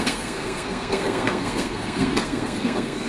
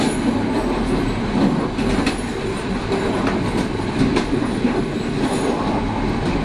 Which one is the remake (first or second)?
first